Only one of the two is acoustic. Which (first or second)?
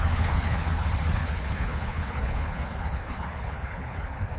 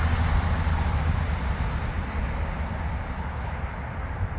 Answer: second